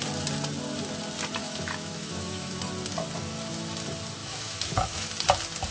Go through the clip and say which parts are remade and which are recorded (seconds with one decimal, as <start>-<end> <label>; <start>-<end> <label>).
0.0-1.4 recorded; 1.4-2.6 remade; 2.6-4.2 recorded; 4.2-5.1 remade; 5.1-5.7 recorded